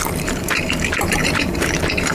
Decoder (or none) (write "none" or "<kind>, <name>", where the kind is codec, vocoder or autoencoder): vocoder, BigVGAN v2